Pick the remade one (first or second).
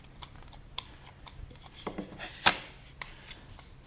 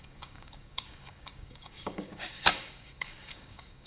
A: second